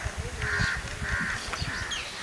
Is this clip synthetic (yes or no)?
no